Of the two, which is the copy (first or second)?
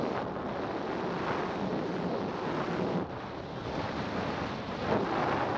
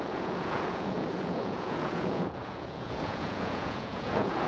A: second